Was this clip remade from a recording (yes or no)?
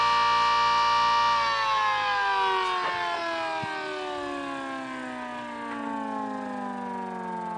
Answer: no